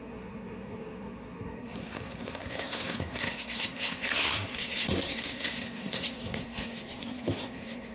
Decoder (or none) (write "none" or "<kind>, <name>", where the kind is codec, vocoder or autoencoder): codec, SNAC